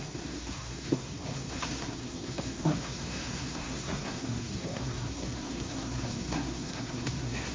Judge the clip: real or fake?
fake